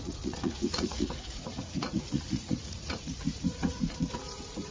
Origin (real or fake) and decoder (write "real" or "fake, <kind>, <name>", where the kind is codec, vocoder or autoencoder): fake, vocoder, Vocos